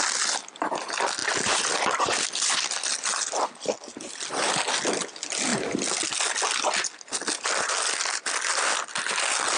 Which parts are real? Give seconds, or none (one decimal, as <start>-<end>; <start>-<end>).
0.0-9.6

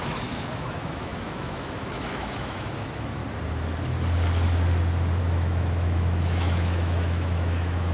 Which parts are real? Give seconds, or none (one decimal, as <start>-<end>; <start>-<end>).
3.2-5.2

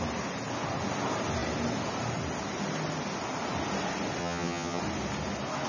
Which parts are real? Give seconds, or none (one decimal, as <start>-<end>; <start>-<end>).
0.0-4.2; 4.8-5.7

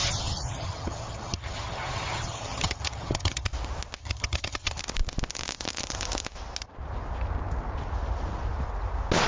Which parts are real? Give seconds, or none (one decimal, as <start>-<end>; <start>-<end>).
3.5-4.0; 4.8-9.3

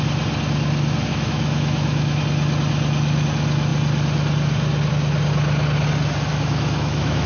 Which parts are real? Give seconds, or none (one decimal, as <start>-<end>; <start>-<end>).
0.0-1.1; 2.2-6.3

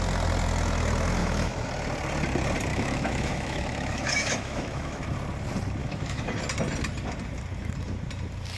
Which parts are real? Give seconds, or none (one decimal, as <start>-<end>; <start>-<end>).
0.0-1.2; 1.7-2.7; 5.0-5.8; 6.3-8.6

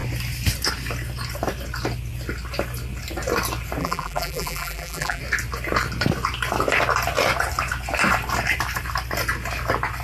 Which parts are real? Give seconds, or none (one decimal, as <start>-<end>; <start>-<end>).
0.0-3.8; 5.2-10.0